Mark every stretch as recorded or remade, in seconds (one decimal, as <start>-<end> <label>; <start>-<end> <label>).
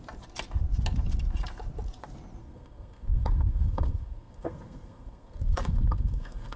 0.0-2.4 recorded; 2.4-6.6 remade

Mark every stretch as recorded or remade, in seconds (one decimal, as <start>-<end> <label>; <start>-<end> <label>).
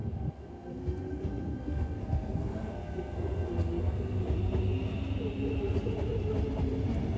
0.0-4.2 remade; 4.2-7.2 recorded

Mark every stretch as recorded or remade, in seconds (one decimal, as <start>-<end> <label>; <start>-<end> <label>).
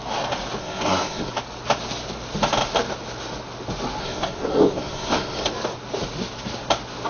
0.0-0.6 recorded; 0.6-1.3 remade; 1.3-4.0 recorded; 4.0-5.5 remade; 5.5-7.1 recorded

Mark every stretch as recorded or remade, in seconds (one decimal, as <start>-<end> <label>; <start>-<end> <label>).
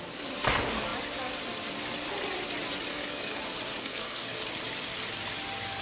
0.0-2.9 recorded; 2.9-3.4 remade; 3.4-3.8 recorded; 3.8-4.4 remade; 4.4-5.8 recorded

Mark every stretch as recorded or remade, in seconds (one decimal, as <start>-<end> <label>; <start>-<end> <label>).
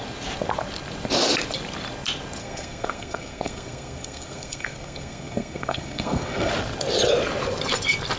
0.0-2.4 recorded; 2.4-6.5 remade; 6.5-8.2 recorded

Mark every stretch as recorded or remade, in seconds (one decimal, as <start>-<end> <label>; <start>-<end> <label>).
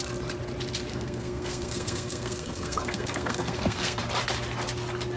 0.0-0.9 recorded; 0.9-4.0 remade; 4.0-5.2 recorded